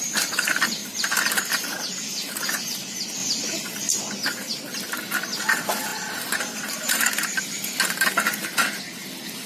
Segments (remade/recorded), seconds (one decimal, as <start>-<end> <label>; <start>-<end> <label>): 0.0-0.8 recorded; 0.8-1.5 remade; 1.5-5.9 recorded; 5.9-7.4 remade; 7.4-9.5 recorded